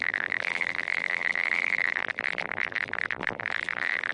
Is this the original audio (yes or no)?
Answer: no